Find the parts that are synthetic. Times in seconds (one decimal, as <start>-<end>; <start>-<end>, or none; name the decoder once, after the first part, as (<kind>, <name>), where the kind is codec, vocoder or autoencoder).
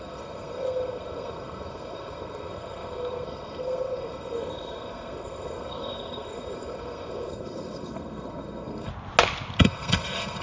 0.0-8.9 (codec, SNAC); 9.6-10.4